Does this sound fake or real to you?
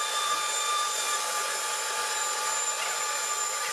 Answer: fake